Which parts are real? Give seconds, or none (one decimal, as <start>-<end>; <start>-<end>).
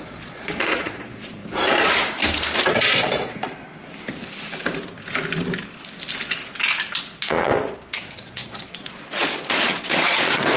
1.4-2.7; 3.7-7.0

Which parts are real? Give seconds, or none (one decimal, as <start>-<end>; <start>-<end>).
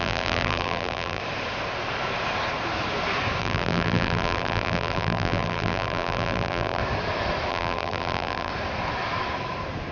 1.2-3.4; 6.8-7.5; 8.5-9.9